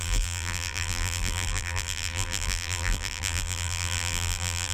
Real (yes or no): no